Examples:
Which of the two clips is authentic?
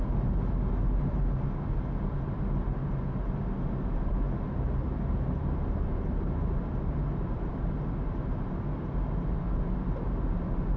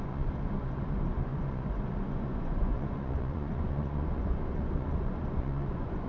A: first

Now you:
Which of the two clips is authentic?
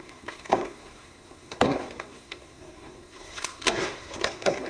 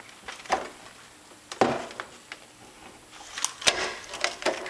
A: second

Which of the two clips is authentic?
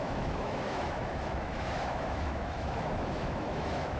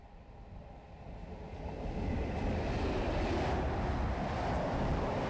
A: second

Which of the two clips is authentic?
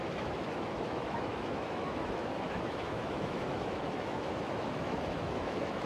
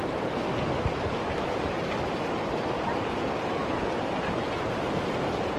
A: second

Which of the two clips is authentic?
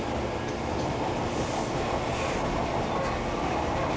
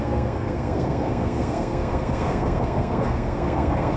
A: first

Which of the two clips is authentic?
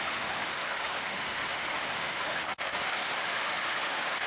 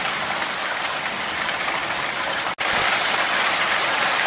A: second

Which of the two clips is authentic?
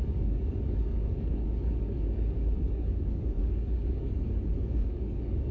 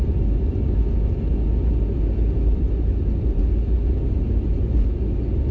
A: second